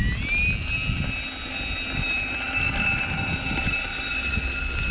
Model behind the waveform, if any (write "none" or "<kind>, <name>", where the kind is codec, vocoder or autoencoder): none